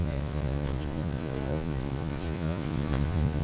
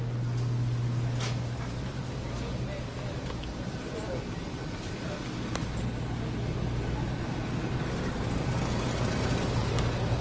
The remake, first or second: first